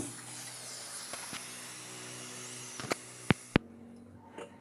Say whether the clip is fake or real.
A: real